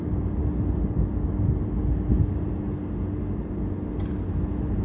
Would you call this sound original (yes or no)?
yes